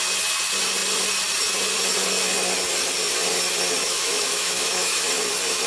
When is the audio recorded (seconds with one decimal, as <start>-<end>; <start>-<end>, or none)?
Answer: 0.0-3.8; 5.1-5.7